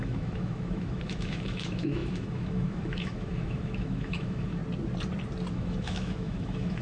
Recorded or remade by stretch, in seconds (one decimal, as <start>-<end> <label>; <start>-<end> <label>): 0.0-4.6 remade; 4.6-5.5 recorded; 5.5-6.8 remade